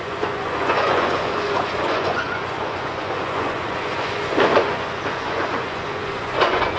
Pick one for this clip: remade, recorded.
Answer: remade